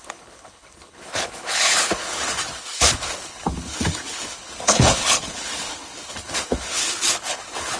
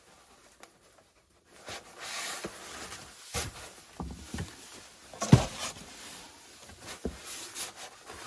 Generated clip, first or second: first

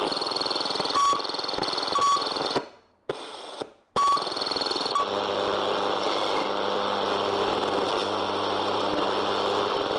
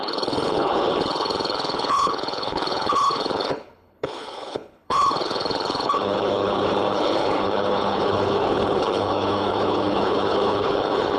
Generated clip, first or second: second